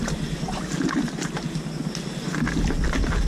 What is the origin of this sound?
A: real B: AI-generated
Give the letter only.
A